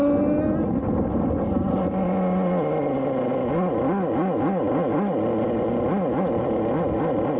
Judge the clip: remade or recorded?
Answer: recorded